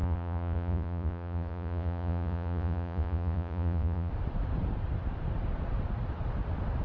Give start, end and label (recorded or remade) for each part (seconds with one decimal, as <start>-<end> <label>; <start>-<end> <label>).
0.0-4.1 remade; 4.1-6.8 recorded